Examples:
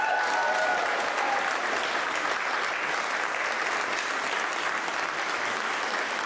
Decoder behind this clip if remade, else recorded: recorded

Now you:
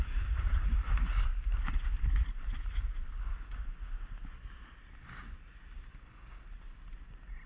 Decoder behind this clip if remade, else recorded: recorded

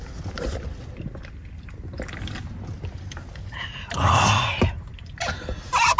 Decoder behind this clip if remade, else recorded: recorded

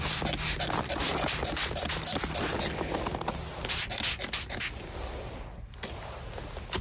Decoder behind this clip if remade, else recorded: recorded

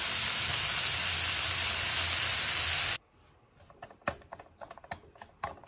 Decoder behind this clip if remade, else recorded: recorded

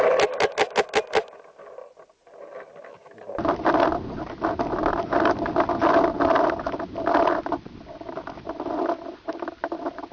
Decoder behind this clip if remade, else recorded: recorded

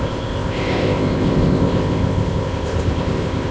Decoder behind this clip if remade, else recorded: remade, codec, ZipCodec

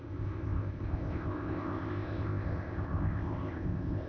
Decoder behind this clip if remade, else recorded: remade, codec, ZipCodec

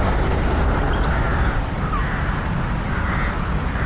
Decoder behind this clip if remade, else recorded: recorded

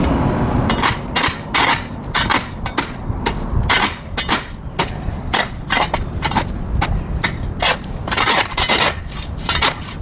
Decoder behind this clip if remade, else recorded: recorded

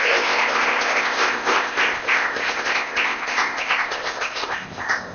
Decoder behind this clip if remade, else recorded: remade, codec, ZipCodec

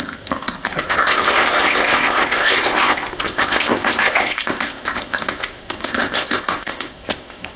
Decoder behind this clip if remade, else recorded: remade, codec, ZipCodec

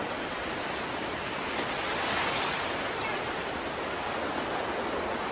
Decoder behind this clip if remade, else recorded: recorded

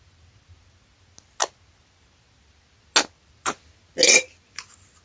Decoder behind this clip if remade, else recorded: recorded